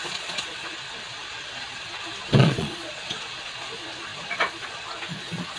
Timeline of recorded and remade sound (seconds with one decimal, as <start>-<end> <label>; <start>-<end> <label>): 0.0-5.6 remade